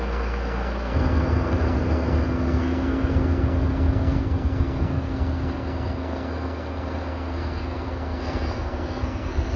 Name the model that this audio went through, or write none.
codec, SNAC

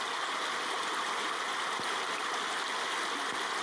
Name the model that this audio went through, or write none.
none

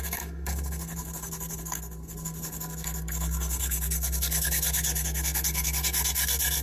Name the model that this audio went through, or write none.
codec, SNAC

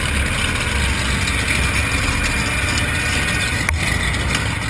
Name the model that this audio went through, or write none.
none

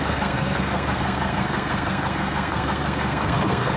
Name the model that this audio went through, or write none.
codec, SNAC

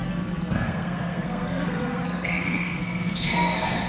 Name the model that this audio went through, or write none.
codec, SNAC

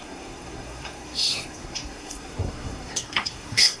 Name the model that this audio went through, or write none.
codec, SNAC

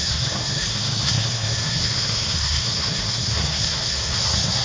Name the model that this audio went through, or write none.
codec, SNAC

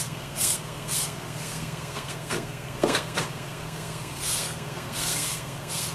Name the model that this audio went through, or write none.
codec, SNAC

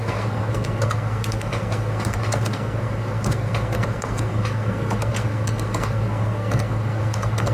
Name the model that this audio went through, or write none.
codec, SNAC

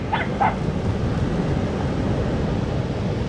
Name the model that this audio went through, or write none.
none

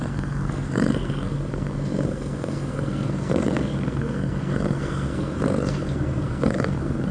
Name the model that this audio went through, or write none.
codec, SNAC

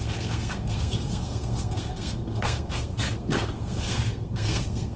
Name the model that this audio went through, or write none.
codec, SNAC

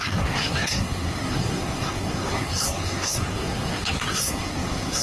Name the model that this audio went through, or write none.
codec, SNAC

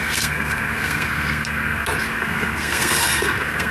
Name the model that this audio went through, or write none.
codec, SNAC